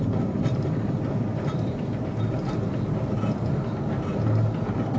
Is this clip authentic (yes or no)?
yes